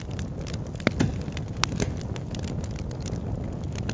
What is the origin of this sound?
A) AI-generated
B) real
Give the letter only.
B